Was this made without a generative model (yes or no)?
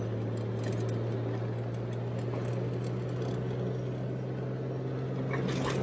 yes